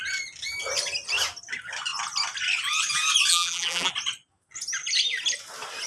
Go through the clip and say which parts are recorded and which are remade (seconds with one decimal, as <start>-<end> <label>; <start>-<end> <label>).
0.0-3.3 recorded; 3.3-3.9 remade; 3.9-5.9 recorded